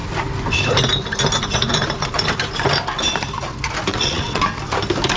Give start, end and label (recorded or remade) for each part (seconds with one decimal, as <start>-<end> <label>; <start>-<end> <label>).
0.0-3.9 recorded; 3.9-4.4 remade; 4.4-5.2 recorded